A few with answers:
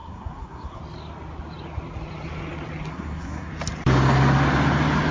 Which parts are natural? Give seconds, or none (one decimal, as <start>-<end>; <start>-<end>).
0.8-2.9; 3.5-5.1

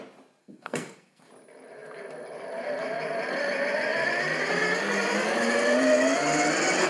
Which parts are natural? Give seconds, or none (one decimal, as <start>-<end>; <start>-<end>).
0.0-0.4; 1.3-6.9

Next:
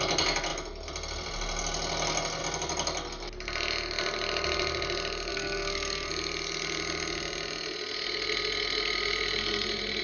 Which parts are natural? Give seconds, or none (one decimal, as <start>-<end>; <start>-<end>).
0.0-5.3; 6.1-10.0